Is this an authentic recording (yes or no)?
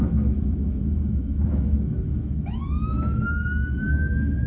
no